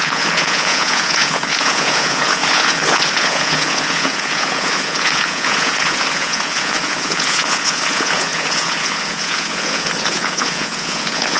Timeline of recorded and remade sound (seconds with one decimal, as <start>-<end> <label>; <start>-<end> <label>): 0.0-11.4 remade